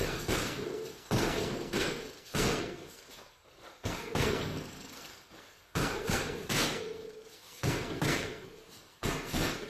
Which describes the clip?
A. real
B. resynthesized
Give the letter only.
B